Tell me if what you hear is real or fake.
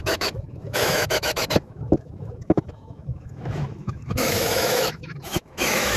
fake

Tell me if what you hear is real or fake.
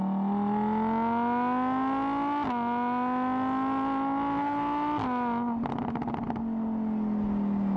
real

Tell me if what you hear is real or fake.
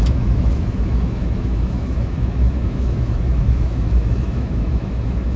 fake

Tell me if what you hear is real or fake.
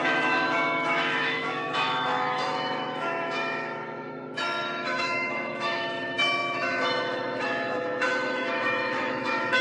fake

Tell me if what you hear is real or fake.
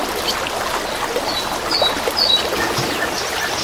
real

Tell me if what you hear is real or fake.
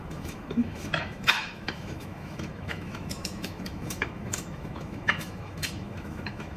fake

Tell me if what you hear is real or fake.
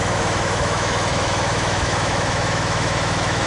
fake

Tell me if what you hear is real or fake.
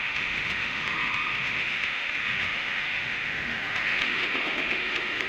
fake